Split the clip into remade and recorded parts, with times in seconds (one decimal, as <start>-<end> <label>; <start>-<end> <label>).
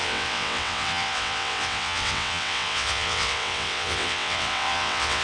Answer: 0.0-5.2 remade